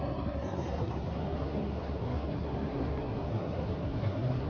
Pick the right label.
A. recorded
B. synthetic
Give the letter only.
B